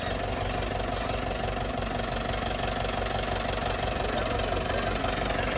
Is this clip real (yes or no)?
yes